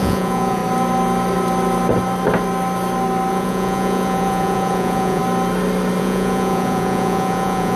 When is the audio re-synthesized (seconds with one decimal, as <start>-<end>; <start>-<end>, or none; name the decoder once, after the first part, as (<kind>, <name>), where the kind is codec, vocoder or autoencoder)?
0.0-0.6 (vocoder, Vocos); 3.3-5.2; 6.0-7.8